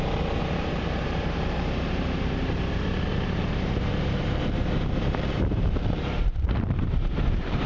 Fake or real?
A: fake